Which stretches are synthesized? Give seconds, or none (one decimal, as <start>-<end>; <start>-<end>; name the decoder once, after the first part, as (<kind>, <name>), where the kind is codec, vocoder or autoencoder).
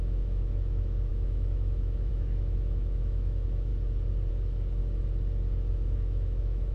0.0-3.7 (autoencoder, DAC-VAE); 4.3-4.8; 5.7-6.7